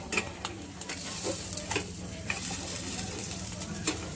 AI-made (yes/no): yes